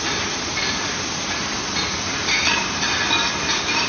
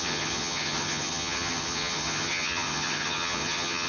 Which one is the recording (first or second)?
first